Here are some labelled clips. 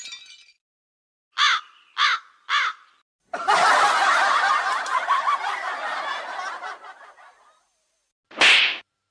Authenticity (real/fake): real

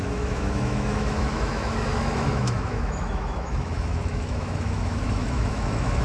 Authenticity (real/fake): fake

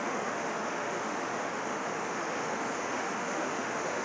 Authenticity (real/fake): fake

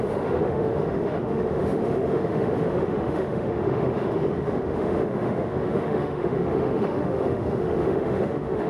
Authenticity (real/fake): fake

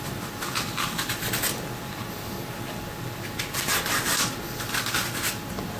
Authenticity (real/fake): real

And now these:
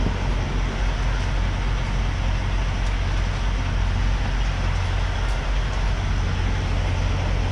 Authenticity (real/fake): real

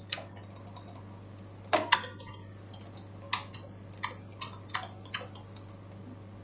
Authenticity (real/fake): real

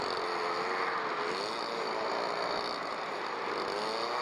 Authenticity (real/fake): real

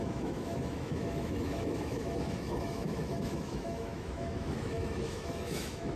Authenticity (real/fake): fake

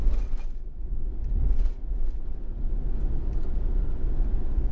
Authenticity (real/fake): real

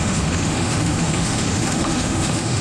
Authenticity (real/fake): fake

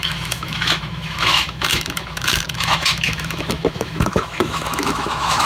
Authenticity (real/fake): fake